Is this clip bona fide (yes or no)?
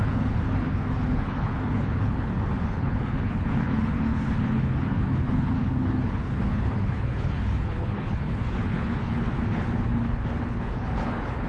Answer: no